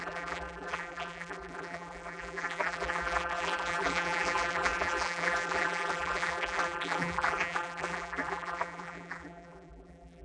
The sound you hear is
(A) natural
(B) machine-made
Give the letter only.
B